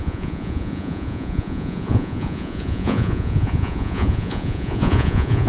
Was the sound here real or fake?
fake